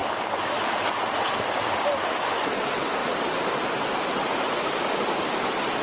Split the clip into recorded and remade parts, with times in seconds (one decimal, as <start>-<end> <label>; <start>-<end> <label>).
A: 0.0-5.8 recorded